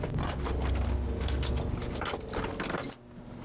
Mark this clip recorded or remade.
recorded